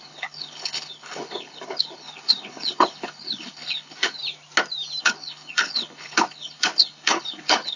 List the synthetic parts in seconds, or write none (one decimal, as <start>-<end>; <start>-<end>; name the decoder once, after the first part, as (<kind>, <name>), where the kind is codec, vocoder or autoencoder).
0.0-4.2 (codec, HILCodec); 5.0-7.8